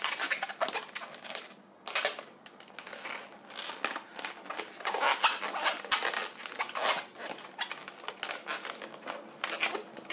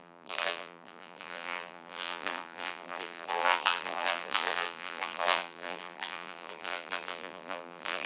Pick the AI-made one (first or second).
second